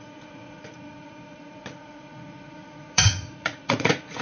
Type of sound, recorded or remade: remade